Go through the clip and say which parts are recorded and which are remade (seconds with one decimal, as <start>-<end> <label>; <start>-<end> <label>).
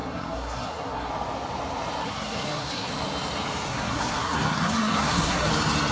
0.0-1.1 remade; 1.1-2.0 recorded; 2.0-2.9 remade; 2.9-3.7 recorded; 3.7-5.5 remade; 5.5-5.9 recorded